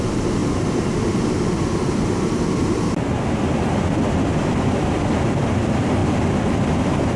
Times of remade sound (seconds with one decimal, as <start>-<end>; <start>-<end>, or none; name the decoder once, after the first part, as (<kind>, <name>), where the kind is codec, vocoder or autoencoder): none